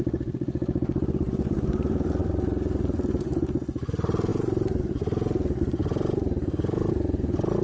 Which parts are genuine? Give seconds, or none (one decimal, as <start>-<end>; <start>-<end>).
0.0-4.3; 4.8-5.8; 6.9-7.6